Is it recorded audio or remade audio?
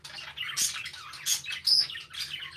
recorded